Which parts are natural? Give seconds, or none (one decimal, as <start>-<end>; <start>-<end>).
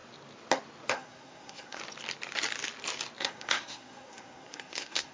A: 0.0-0.9; 1.8-3.2